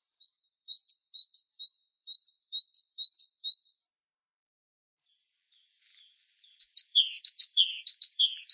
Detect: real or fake fake